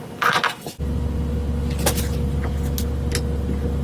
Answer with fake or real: real